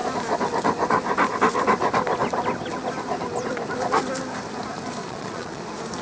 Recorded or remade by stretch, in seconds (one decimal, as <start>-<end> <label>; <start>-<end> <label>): 0.0-5.0 recorded; 5.0-5.6 remade; 5.6-6.0 recorded